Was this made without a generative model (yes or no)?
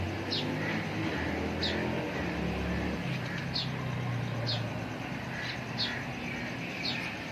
yes